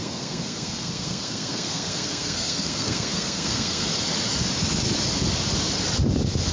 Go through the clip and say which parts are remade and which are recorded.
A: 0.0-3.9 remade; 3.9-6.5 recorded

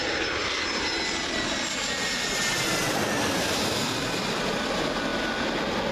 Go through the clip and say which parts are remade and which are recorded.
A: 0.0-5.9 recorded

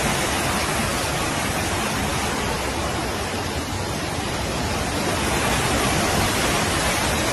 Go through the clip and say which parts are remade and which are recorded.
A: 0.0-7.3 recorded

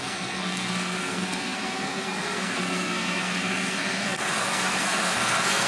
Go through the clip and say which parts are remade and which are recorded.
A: 0.0-5.7 remade

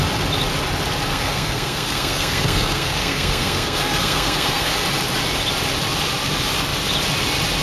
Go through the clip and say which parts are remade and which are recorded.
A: 0.0-1.1 recorded; 1.1-4.7 remade; 4.7-7.6 recorded

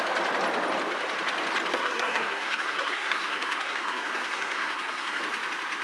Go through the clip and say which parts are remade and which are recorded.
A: 0.0-1.7 recorded; 1.7-5.2 remade; 5.2-5.8 recorded

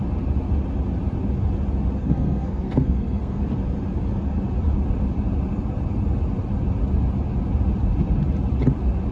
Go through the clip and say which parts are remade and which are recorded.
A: 0.0-2.0 recorded; 2.0-3.4 remade; 3.4-9.1 recorded

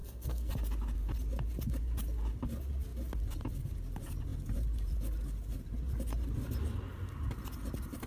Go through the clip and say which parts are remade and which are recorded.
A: 0.0-0.5 remade; 0.5-8.1 recorded